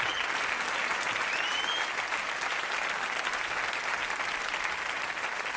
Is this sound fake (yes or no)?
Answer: no